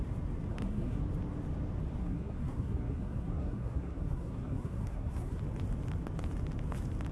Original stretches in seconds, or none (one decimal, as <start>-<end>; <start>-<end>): 0.0-0.5; 1.0-2.0; 5.4-7.1